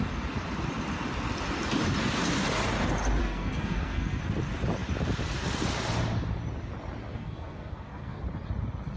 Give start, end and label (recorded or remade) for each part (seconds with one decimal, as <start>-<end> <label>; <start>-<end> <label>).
0.0-3.2 recorded; 3.2-4.2 remade; 4.2-7.1 recorded; 7.1-8.2 remade; 8.2-9.0 recorded